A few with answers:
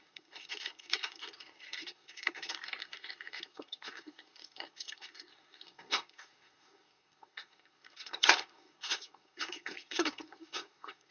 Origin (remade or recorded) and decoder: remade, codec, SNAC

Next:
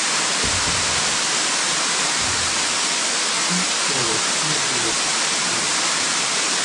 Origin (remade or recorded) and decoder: recorded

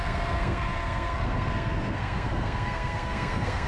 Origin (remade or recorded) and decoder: remade, codec, SNAC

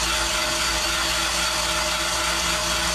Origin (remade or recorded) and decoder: recorded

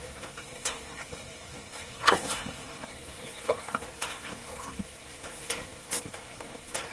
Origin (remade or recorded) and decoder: remade, codec, SNAC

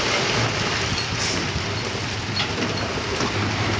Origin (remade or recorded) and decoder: recorded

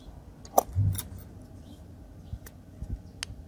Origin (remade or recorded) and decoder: recorded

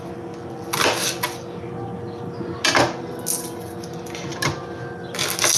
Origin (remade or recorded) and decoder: recorded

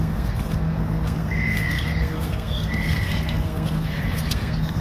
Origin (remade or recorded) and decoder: remade, codec, SNAC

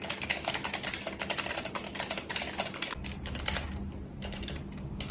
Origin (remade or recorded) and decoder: recorded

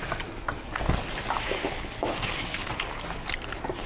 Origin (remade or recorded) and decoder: recorded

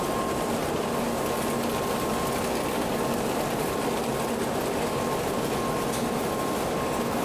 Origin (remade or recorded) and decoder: recorded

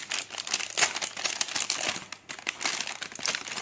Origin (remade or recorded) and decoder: recorded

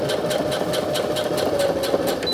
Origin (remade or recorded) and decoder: recorded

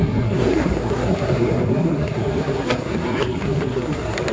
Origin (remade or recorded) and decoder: remade, codec, SNAC